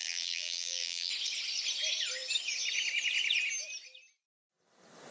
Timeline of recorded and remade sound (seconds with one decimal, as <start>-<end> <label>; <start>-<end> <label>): 0.0-1.1 remade; 1.1-5.1 recorded